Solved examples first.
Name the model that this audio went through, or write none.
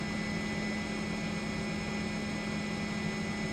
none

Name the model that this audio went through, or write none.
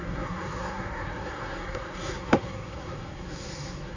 codec, SNAC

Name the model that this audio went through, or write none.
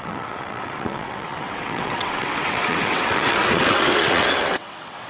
vocoder, WaveNeXt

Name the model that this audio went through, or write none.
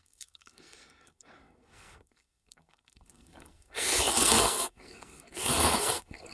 codec, SNAC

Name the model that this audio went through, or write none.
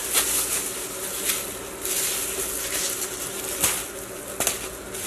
none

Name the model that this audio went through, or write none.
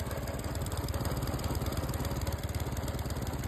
none